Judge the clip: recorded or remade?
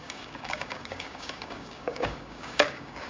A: remade